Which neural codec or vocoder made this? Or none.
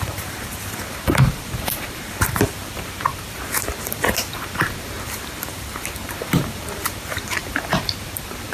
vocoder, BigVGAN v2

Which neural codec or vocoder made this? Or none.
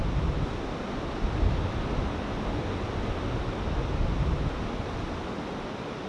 none